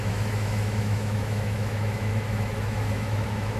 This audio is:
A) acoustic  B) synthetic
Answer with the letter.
B